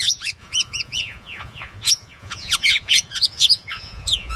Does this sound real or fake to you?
fake